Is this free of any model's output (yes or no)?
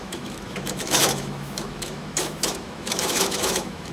no